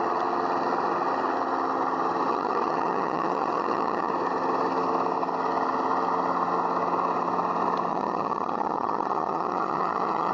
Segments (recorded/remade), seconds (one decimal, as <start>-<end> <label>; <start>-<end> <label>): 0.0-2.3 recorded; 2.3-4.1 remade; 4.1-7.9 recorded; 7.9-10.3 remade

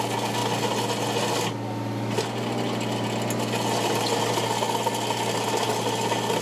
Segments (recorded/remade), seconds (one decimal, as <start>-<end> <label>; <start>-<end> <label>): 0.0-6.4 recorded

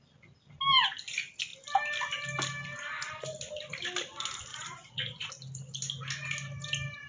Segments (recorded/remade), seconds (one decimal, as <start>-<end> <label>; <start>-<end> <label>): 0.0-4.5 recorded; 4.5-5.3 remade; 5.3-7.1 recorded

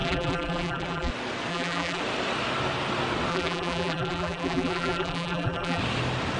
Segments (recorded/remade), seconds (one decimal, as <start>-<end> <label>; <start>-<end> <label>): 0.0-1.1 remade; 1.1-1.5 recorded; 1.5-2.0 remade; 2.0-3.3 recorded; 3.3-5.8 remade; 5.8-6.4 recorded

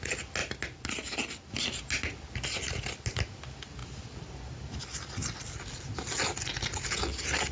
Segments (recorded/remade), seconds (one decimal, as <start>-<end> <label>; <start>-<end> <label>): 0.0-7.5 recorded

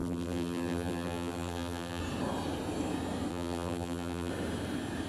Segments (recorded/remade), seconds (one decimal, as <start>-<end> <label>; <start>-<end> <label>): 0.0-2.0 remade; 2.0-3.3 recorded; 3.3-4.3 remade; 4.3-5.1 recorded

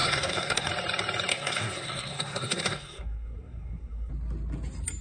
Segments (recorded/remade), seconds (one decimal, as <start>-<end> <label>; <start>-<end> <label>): 0.0-0.7 remade; 0.7-1.3 recorded; 1.3-4.1 remade; 4.1-5.0 recorded